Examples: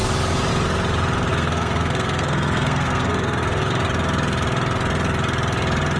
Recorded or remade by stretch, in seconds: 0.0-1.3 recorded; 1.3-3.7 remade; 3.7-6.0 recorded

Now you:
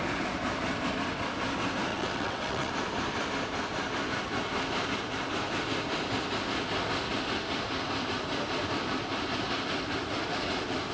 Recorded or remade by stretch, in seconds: 0.0-1.9 recorded; 1.9-2.7 remade; 2.7-10.9 recorded

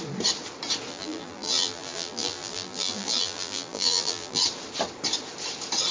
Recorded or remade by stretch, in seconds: 0.0-0.9 recorded; 0.9-4.4 remade; 4.4-5.9 recorded

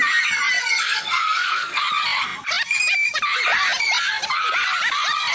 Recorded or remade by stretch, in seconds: 0.0-0.6 recorded; 0.6-1.8 remade; 1.8-5.3 recorded

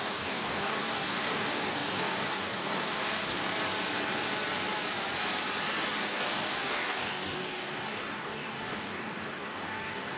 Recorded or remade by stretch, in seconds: 0.0-3.5 remade; 3.5-6.1 recorded; 6.1-10.2 remade

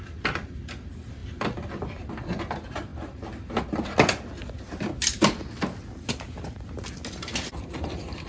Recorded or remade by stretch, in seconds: 0.0-8.3 recorded